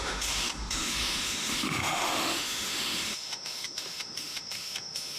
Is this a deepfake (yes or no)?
yes